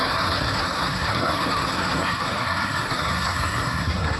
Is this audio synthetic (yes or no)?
yes